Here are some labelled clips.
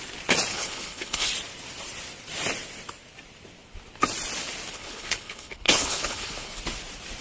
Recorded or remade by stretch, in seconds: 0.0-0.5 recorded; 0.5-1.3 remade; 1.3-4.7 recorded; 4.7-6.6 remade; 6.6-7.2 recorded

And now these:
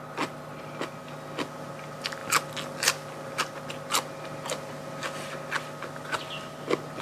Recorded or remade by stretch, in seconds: 0.0-7.0 recorded

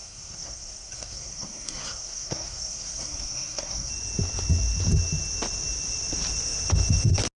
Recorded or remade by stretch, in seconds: 0.0-3.9 remade; 3.9-7.4 recorded

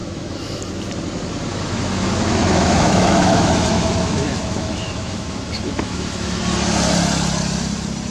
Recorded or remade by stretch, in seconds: 0.0-0.6 remade; 0.6-1.5 recorded; 1.5-6.4 remade; 6.4-8.1 recorded